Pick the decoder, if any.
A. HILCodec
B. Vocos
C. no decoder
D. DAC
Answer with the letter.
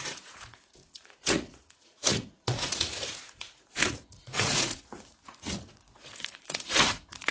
B